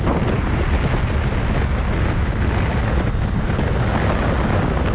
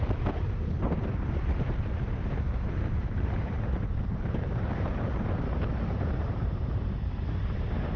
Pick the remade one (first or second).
second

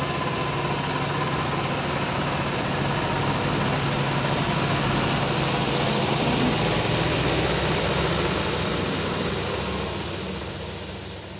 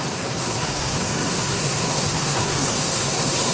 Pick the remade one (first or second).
second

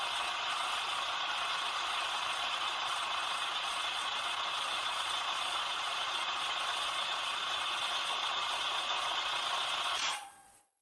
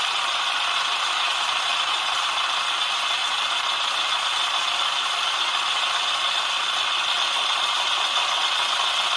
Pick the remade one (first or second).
first